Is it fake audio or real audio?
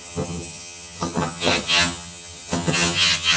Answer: fake